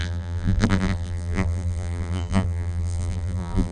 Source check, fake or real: fake